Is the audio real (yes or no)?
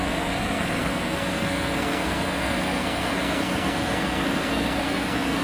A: no